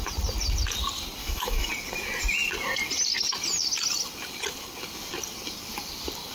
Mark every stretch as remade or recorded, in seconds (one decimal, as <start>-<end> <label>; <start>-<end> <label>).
0.0-1.2 recorded; 1.2-1.7 remade; 1.7-6.3 recorded